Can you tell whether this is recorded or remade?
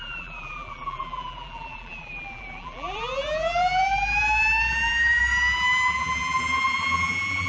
remade